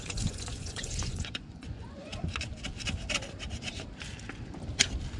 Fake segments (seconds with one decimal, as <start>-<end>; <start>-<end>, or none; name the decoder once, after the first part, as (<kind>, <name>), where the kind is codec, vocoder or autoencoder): 0.0-2.1 (vocoder, Vocos)